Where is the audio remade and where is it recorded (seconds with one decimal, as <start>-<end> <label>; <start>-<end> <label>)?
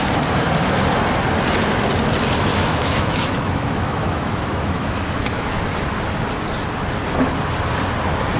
0.0-2.5 recorded; 2.5-5.6 remade; 5.6-8.4 recorded